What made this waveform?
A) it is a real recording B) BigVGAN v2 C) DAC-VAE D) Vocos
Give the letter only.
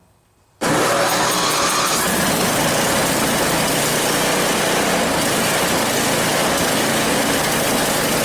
A